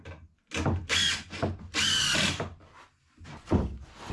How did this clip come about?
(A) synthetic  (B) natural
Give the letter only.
B